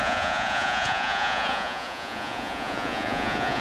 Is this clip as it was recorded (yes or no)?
no